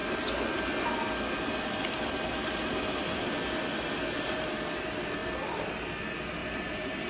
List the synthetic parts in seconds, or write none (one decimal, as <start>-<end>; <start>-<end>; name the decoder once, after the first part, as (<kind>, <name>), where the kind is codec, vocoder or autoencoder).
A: 6.4-7.1 (vocoder, BigVGAN v2)